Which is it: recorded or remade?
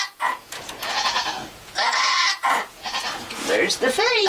remade